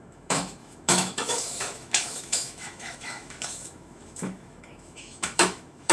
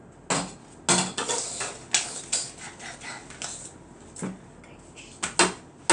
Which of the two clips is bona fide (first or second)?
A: second